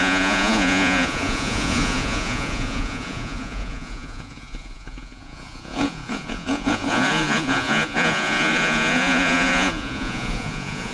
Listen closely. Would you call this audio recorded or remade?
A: remade